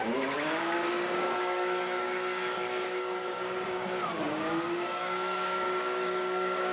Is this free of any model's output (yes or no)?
no